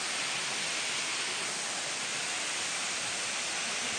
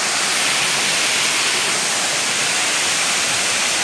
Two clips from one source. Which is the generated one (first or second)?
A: second